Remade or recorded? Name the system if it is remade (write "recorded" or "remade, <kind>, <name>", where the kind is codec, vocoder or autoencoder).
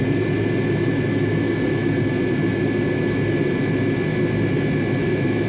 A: recorded